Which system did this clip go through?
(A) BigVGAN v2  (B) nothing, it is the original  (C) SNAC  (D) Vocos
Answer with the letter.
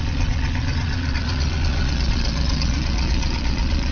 D